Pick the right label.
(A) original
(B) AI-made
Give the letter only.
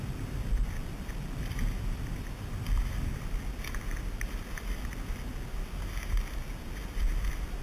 A